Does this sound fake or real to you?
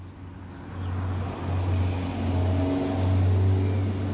real